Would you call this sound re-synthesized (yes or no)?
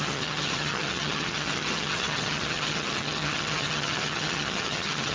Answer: yes